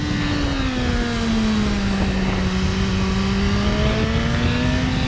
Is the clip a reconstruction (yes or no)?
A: no